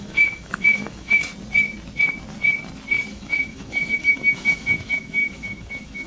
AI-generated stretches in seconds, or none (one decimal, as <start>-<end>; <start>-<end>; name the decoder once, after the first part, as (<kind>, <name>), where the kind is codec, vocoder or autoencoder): 0.0-1.3 (autoencoder, DAC-VAE); 3.1-6.1